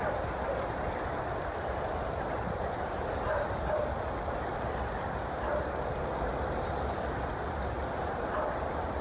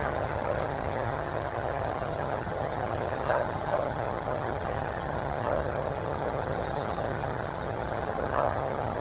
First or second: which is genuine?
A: first